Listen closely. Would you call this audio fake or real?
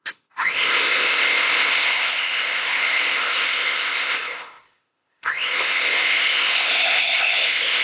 fake